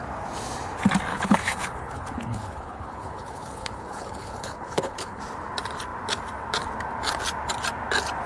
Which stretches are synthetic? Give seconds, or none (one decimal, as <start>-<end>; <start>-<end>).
1.1-5.2